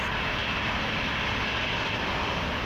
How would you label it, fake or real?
real